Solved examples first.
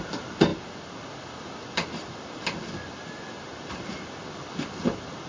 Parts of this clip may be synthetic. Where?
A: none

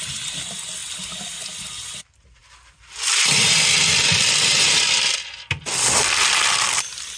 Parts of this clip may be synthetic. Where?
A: none